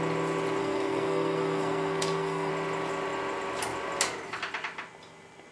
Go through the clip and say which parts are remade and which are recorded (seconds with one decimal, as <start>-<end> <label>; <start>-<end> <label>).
0.0-0.6 recorded; 0.6-2.5 remade; 2.5-5.5 recorded